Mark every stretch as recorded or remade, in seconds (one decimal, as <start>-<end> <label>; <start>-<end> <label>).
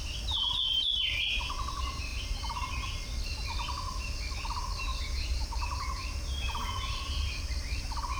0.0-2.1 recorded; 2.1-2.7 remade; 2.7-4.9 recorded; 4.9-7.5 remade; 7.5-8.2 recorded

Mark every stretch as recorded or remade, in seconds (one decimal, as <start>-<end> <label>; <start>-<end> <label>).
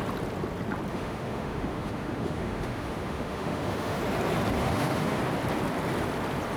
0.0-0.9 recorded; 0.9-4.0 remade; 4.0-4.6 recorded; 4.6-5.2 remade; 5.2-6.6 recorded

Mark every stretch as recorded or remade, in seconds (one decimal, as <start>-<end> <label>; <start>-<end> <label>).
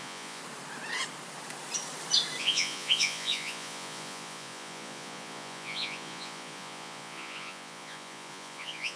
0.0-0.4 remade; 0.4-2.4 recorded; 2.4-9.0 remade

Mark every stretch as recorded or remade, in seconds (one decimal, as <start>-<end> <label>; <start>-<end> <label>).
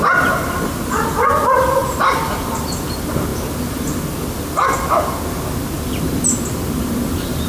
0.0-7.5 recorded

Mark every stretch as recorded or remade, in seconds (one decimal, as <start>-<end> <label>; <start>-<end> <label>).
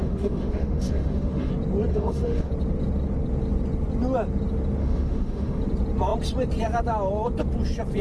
0.0-1.5 remade; 1.5-1.9 recorded; 1.9-2.5 remade; 2.5-4.8 recorded; 4.8-5.6 remade; 5.6-8.0 recorded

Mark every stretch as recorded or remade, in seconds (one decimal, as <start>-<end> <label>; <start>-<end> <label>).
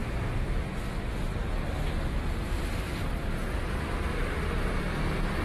0.0-5.4 recorded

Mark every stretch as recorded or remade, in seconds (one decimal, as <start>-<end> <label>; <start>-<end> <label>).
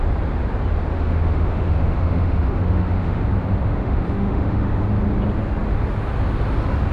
0.0-0.9 recorded; 0.9-3.2 remade; 3.2-3.7 recorded; 3.7-4.8 remade; 4.8-6.9 recorded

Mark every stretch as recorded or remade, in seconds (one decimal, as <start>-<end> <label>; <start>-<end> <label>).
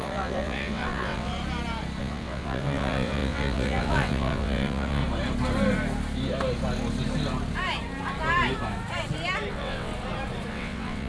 0.0-1.3 remade; 1.3-2.0 recorded; 2.0-5.0 remade; 5.0-9.5 recorded; 9.5-9.9 remade; 9.9-10.5 recorded; 10.5-11.1 remade